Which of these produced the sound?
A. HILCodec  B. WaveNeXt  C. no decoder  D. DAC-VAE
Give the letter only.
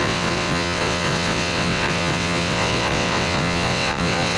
B